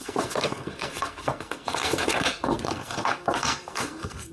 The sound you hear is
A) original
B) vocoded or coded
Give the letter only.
B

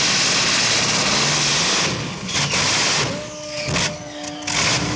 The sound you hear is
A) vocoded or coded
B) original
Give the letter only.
B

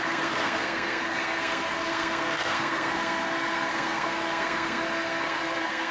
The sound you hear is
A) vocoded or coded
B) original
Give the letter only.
A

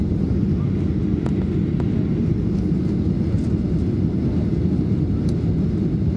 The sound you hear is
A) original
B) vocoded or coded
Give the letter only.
A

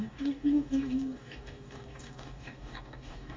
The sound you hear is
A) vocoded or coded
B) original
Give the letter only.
A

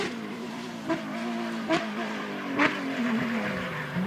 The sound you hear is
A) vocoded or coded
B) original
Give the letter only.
A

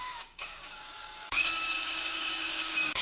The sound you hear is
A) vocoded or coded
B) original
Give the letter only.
A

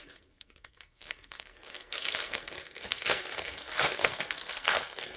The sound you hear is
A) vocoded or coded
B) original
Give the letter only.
A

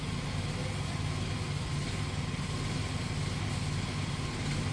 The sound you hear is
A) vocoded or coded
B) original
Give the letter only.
B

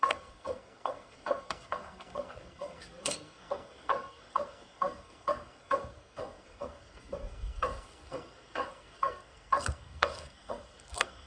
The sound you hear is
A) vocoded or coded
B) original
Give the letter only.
A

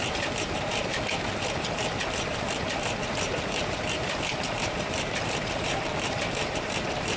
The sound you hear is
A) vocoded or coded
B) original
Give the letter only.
A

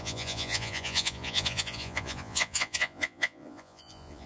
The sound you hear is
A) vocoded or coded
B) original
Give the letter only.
A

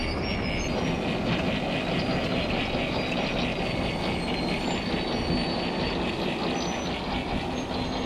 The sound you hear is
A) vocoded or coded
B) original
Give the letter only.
B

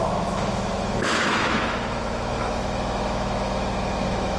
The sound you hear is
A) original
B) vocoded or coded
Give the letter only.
B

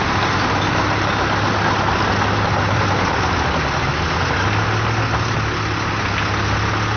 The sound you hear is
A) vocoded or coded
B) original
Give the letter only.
B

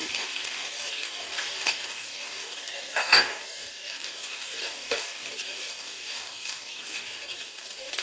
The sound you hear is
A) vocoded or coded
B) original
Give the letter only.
A